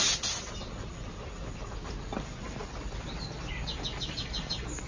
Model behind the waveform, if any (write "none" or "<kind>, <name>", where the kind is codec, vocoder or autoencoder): none